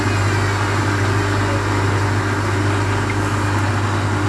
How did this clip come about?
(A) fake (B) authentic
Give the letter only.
B